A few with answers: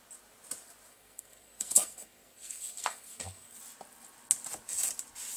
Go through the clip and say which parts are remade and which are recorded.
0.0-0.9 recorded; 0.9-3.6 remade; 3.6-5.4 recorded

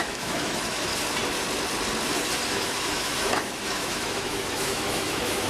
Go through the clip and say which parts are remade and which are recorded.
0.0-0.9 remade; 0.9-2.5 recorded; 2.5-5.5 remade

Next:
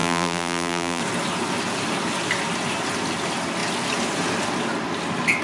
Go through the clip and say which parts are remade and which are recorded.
0.0-1.0 remade; 1.0-5.4 recorded

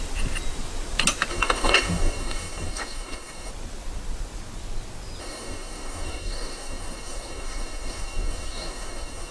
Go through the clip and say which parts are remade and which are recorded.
0.0-1.3 recorded; 1.3-3.5 remade; 3.5-5.2 recorded; 5.2-9.3 remade